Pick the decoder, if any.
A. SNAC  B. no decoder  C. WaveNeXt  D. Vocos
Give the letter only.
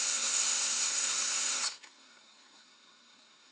A